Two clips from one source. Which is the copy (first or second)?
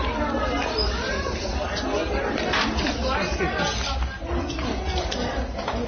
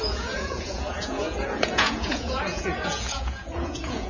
second